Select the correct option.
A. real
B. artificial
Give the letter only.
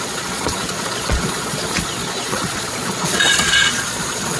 B